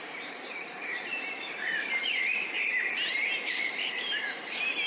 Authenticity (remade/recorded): remade